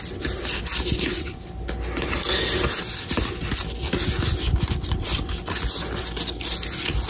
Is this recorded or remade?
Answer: recorded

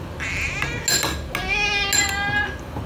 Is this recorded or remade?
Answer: recorded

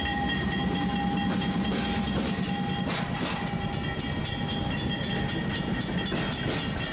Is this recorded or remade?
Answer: recorded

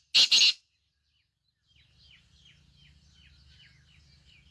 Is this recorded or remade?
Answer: recorded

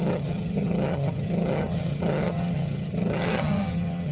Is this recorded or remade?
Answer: remade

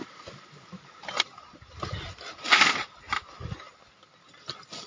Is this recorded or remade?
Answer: recorded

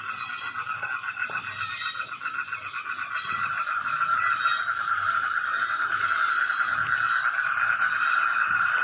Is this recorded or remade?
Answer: recorded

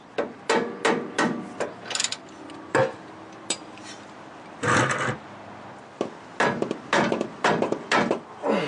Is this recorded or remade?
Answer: recorded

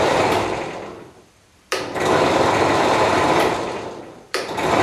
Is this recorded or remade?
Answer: remade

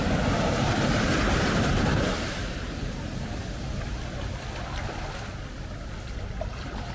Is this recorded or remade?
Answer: recorded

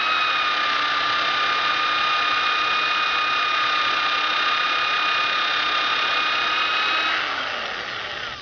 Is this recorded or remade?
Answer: recorded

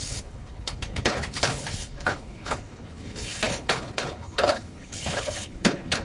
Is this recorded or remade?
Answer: remade